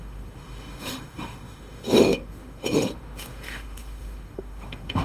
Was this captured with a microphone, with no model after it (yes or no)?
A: no